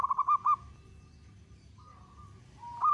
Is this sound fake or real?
real